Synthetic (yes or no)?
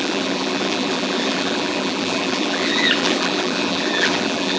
yes